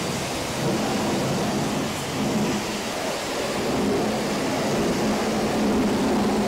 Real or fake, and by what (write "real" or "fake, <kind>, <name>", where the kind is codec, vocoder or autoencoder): real